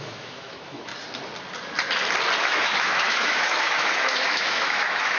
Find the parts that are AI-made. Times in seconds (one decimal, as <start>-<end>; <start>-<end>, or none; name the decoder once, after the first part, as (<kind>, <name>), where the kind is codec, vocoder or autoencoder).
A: 0.0-0.9 (autoencoder, DAC-VAE); 2.4-5.2